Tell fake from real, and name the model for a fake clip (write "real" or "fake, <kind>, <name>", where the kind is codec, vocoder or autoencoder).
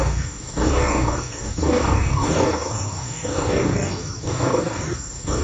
fake, codec, DAC